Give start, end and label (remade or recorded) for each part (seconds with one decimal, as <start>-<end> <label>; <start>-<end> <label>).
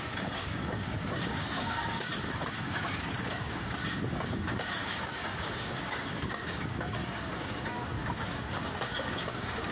0.0-9.7 remade